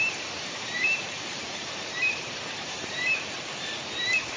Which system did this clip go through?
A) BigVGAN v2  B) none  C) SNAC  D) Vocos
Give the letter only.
A